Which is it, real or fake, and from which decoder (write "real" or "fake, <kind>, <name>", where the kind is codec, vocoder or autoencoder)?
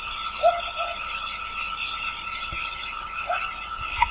real